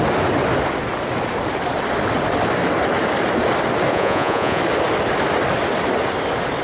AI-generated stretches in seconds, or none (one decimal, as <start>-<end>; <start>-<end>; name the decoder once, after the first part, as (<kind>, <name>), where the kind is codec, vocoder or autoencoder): 3.9-4.6 (vocoder, Vocos)